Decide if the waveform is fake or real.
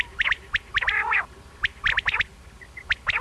real